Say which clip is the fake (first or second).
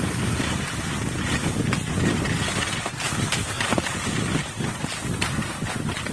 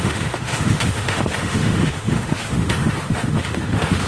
second